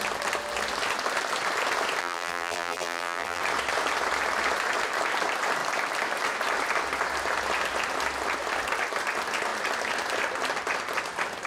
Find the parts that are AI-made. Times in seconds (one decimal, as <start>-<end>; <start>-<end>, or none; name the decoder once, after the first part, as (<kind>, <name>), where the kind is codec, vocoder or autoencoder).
2.0-3.4 (vocoder, BigVGAN v2)